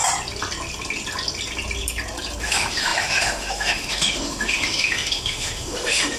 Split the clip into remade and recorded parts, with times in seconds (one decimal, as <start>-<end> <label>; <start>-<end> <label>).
0.0-2.4 recorded; 2.4-6.2 remade